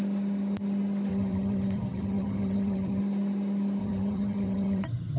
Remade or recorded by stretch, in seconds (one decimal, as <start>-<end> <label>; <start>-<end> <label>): 0.0-1.1 recorded; 1.1-3.0 remade; 3.0-3.8 recorded; 3.8-5.2 remade

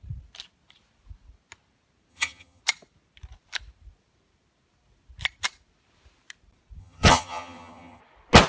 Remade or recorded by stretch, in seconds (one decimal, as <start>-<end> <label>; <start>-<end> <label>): 0.0-2.1 recorded; 2.1-2.6 remade; 2.6-6.8 recorded; 6.8-8.0 remade; 8.0-8.5 recorded

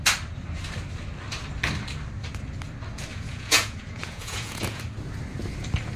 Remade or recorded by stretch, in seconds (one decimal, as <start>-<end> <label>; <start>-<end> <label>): 0.0-3.1 recorded; 3.1-4.8 remade; 4.8-6.0 recorded

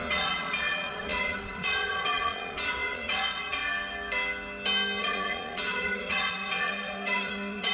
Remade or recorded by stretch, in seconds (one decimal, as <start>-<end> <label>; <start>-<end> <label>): 0.0-3.6 remade; 3.6-5.0 recorded; 5.0-7.7 remade

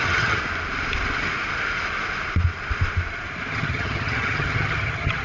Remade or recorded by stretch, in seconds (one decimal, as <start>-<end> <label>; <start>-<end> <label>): 0.0-0.4 remade; 0.4-3.5 recorded; 3.5-5.2 remade